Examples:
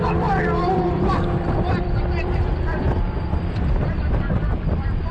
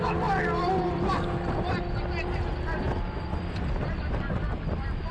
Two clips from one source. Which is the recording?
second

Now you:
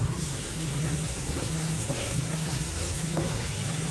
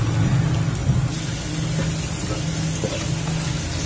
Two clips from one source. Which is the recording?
second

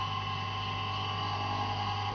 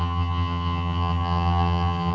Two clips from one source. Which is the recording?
first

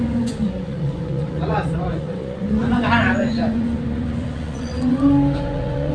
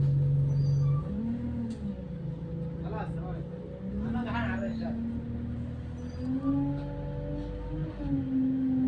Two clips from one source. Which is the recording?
second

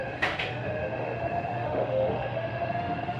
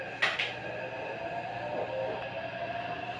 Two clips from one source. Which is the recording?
second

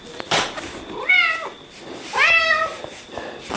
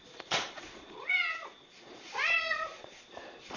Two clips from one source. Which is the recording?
first